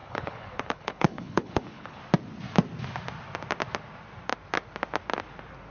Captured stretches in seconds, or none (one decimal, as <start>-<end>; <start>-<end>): 2.0-5.7